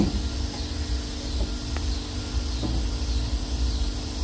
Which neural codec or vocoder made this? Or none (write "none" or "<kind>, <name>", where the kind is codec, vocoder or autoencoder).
none